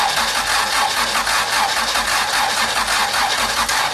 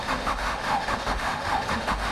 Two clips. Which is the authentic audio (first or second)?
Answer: first